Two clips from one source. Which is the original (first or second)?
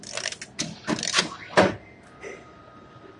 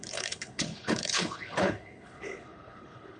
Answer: first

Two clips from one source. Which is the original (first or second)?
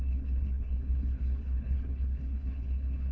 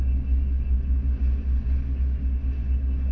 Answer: second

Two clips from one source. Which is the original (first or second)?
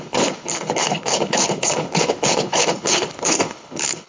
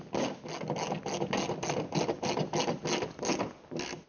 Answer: second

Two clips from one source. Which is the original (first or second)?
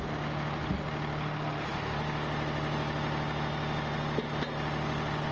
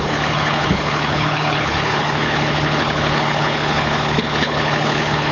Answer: first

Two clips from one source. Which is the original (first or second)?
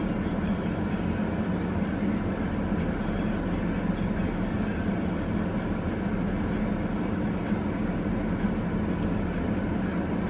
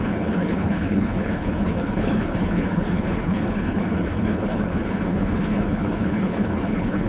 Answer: first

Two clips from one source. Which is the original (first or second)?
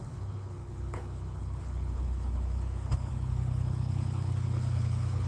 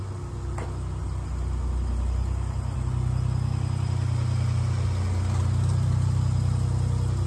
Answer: second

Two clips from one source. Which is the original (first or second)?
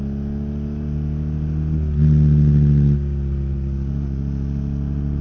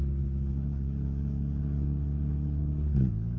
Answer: first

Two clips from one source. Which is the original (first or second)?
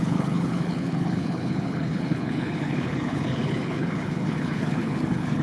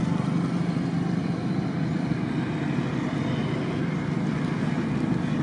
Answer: second